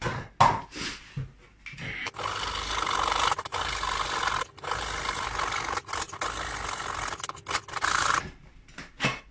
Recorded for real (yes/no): yes